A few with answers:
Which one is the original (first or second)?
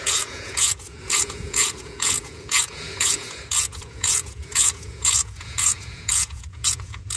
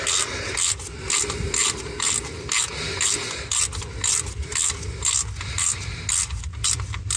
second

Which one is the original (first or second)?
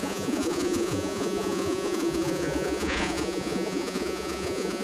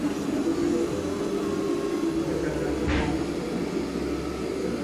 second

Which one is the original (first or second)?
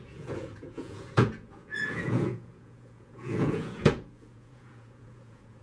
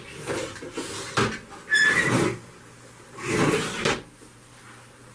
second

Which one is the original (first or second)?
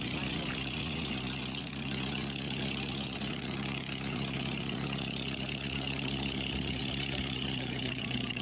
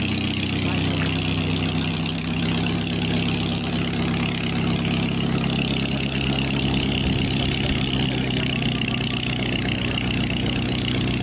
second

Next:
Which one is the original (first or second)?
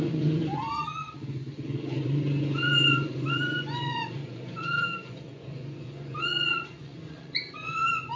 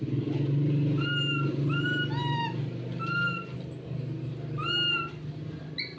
second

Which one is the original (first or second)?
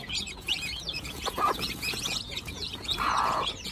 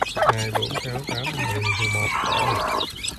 second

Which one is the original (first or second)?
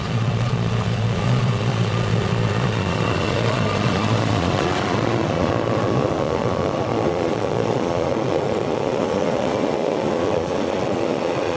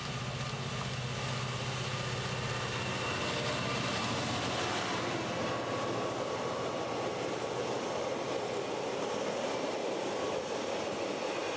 second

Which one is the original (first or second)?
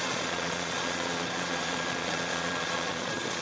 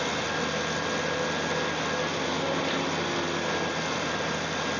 second